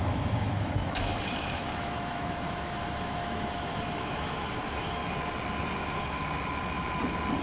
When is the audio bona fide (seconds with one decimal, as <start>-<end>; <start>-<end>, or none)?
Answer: 5.0-5.8; 6.2-7.4